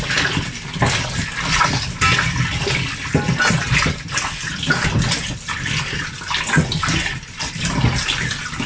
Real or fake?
real